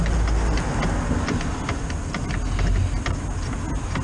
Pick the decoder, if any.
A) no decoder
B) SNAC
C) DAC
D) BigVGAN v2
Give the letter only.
A